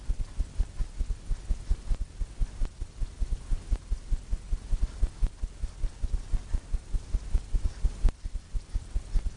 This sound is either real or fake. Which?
fake